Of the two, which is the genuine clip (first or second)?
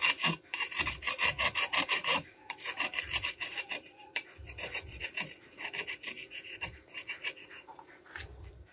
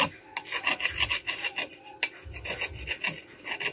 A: second